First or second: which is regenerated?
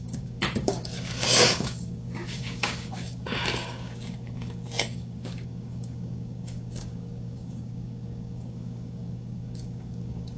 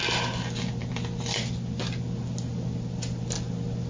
first